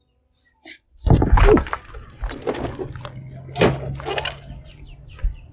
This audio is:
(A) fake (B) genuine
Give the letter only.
B